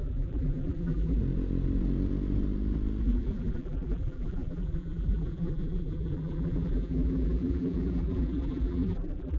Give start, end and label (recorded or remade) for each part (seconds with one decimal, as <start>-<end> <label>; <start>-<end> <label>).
0.0-1.2 remade; 1.2-3.0 recorded; 3.0-9.4 remade

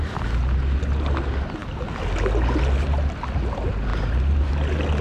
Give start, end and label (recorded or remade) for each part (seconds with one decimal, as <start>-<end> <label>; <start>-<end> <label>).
0.0-3.9 recorded; 3.9-4.5 remade; 4.5-5.0 recorded

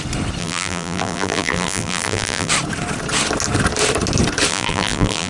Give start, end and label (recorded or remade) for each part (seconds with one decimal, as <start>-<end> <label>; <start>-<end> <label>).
0.0-0.4 recorded; 0.4-2.5 remade; 2.5-4.5 recorded; 4.5-5.3 remade

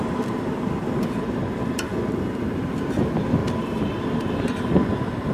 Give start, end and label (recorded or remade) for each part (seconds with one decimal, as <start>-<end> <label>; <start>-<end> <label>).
0.0-3.4 recorded; 3.4-4.0 remade; 4.0-5.3 recorded

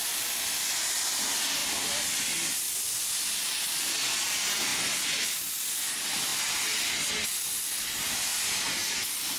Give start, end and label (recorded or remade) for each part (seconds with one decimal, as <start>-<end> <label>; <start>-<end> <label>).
0.0-1.6 recorded; 1.6-2.9 remade; 2.9-9.4 recorded

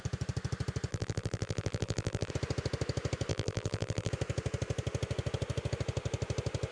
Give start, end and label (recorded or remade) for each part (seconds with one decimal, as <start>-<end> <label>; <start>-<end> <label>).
0.0-0.9 recorded; 0.9-2.3 remade; 2.3-3.3 recorded; 3.3-4.1 remade; 4.1-6.7 recorded